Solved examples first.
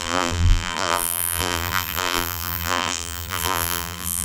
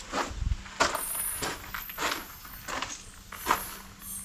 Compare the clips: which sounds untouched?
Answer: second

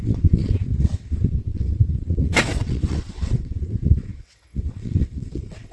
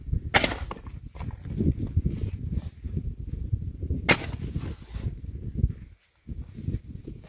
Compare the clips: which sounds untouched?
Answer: second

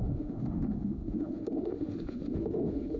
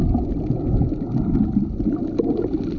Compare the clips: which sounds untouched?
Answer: second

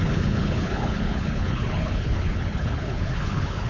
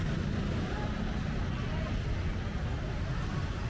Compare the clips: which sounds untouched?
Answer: second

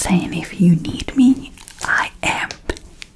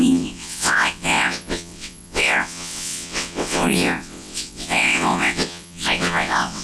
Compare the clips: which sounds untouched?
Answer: first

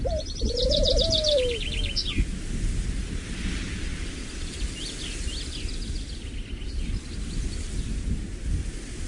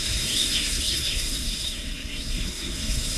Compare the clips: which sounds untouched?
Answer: first